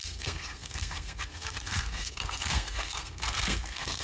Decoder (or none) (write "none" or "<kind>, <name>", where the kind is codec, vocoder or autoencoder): codec, SNAC